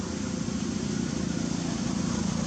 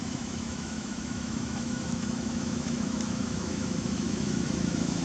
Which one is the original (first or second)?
first